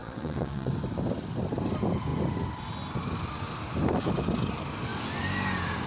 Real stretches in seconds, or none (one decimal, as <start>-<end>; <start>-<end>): 0.7-5.9